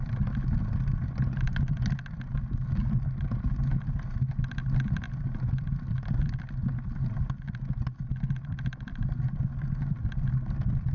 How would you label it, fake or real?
real